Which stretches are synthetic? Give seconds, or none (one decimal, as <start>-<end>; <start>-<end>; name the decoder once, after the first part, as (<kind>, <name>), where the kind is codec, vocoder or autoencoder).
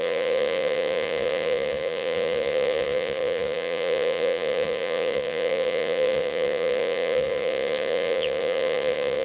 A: 0.0-9.2 (vocoder, Vocos)